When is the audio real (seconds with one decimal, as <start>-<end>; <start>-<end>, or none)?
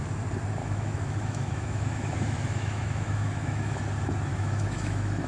0.0-0.6; 3.8-4.3